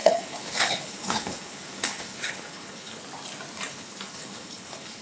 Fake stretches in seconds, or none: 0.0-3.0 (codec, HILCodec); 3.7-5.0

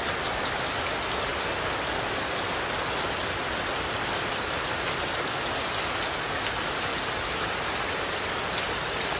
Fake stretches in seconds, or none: none

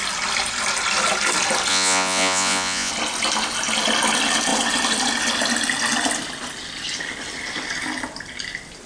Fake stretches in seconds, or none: 1.7-2.9 (vocoder, Vocos)

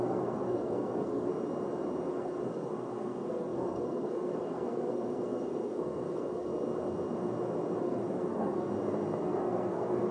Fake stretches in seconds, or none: 0.0-1.3 (codec, SNAC); 2.1-6.5; 7.8-8.7; 9.2-10.1

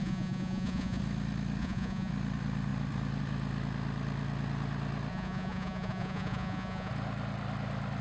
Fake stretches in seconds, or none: 0.0-1.0 (vocoder, Vocos); 1.6-2.1; 5.1-6.9

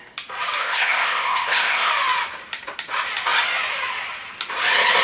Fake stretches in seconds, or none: 0.6-1.9 (codec, ZipCodec)

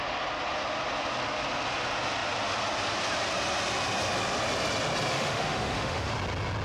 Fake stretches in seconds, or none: 5.1-6.1 (autoencoder, DAC-VAE)

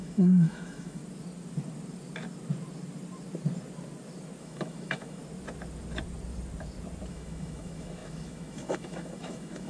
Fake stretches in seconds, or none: 0.0-1.0 (autoencoder, DAC-VAE); 4.4-5.2; 7.1-9.7